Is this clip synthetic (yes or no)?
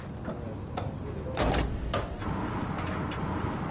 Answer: no